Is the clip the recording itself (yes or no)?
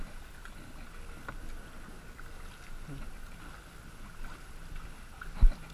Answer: yes